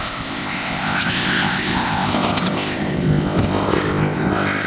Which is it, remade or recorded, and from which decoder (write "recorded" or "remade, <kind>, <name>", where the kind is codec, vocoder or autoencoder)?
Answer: remade, codec, ZipCodec